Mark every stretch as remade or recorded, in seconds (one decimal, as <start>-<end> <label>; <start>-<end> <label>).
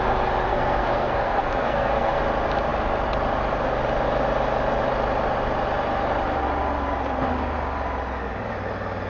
0.0-0.5 recorded; 0.5-2.2 remade; 2.2-9.1 recorded